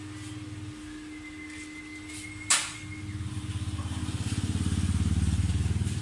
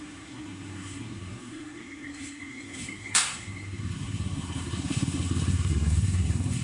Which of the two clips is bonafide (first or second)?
first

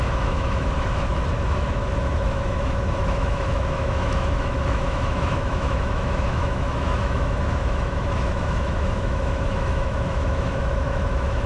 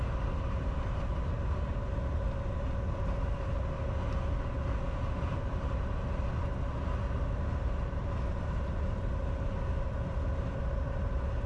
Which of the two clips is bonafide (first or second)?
second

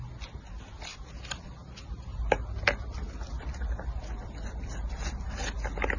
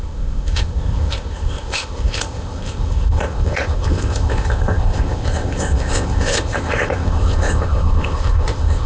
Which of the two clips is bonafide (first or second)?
first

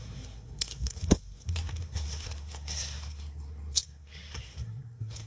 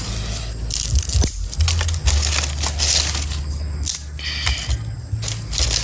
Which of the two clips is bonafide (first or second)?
second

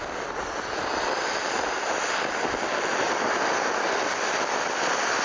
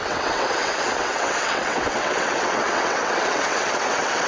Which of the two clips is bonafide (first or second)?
first